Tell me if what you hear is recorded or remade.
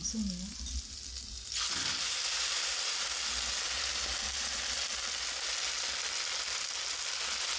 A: recorded